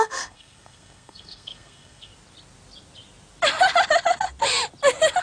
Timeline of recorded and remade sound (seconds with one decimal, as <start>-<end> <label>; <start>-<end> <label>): 0.0-2.1 remade; 2.1-5.2 recorded